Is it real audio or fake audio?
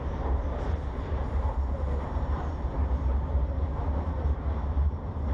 fake